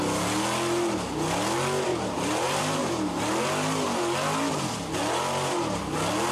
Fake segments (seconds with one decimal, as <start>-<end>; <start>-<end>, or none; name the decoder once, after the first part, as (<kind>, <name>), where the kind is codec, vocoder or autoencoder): 1.9-2.9 (vocoder, BigVGAN v2)